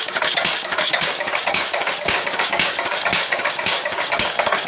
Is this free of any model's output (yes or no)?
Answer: no